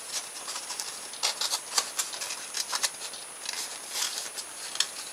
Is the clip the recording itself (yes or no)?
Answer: yes